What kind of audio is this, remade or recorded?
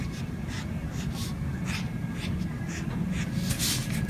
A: recorded